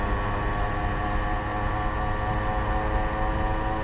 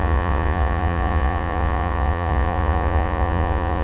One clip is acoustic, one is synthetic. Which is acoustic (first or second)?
first